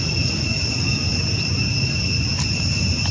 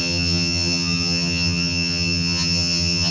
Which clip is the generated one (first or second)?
second